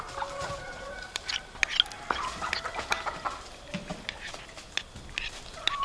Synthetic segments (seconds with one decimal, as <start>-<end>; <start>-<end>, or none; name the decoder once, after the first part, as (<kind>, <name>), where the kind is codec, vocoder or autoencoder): none